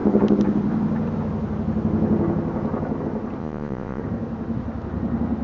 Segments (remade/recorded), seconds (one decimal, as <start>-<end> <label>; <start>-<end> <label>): 0.0-3.4 recorded; 3.4-4.0 remade; 4.0-5.4 recorded